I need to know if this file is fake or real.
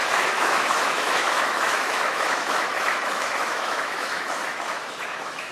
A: fake